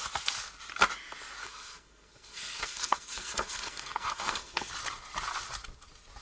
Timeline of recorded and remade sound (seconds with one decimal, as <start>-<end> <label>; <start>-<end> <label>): 0.0-1.4 recorded; 1.4-4.7 remade; 4.7-6.2 recorded